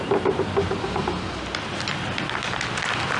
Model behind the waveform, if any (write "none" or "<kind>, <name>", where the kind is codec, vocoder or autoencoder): none